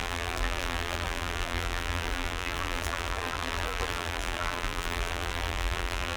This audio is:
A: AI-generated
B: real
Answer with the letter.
A